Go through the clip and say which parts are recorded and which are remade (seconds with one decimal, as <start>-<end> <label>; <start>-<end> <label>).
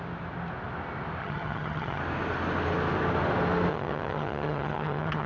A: 0.0-1.2 recorded; 1.2-2.0 remade; 2.0-3.7 recorded; 3.7-5.3 remade